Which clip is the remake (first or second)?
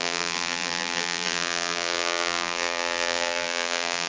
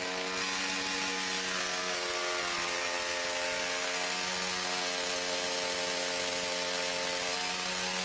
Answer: first